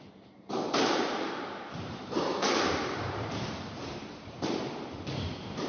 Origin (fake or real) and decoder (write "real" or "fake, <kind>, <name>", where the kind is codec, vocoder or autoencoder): fake, vocoder, BigVGAN v2